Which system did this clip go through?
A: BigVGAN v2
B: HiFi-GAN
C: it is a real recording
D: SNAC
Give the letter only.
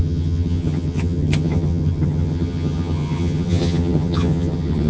B